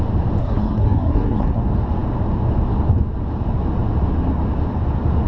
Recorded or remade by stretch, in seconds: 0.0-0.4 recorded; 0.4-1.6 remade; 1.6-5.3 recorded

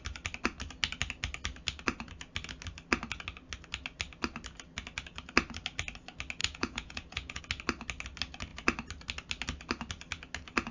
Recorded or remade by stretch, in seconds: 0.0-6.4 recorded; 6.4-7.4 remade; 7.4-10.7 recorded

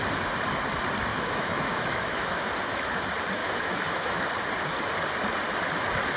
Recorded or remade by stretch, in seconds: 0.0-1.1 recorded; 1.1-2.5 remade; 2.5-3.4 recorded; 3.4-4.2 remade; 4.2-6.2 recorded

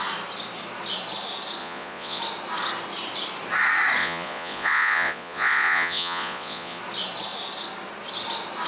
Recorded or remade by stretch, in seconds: 0.0-1.6 recorded; 1.6-2.2 remade; 2.2-4.0 recorded; 4.0-6.8 remade; 6.8-8.7 recorded

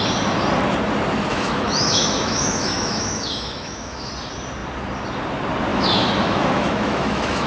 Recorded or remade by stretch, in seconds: 0.0-1.3 recorded; 1.3-4.1 remade; 4.1-5.7 recorded; 5.7-7.5 remade

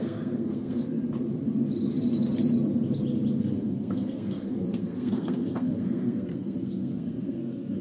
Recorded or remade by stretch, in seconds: 0.0-1.0 remade; 1.0-3.4 recorded; 3.4-7.8 remade